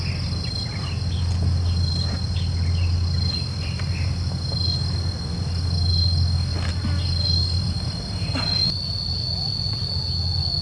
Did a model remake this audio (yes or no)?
no